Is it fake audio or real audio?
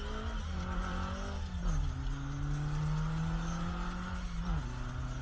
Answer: real